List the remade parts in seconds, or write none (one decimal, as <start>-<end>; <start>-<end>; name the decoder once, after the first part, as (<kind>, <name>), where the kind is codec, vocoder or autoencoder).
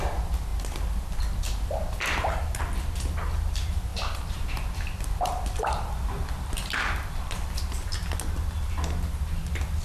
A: 3.9-7.6 (vocoder, BigVGAN v2)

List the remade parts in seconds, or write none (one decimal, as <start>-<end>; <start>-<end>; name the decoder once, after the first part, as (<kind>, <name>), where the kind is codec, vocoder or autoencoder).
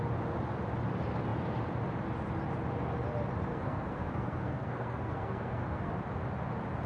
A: 3.5-5.9 (codec, SNAC)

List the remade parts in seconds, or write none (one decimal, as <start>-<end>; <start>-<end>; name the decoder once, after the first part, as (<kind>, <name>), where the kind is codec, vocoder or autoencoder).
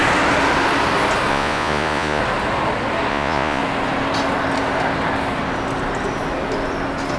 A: 1.3-2.2 (vocoder, Vocos); 3.1-3.6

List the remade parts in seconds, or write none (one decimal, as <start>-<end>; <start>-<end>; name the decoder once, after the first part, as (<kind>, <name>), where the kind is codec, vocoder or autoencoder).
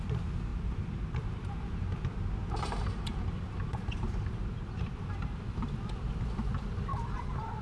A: 0.5-1.5 (vocoder, BigVGAN v2); 2.4-5.6; 6.9-7.6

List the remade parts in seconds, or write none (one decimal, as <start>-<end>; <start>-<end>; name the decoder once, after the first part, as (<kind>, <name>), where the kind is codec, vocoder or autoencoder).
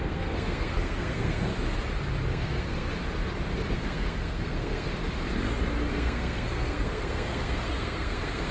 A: 0.0-1.5 (codec, SNAC); 2.3-2.9; 3.7-4.9; 5.9-8.5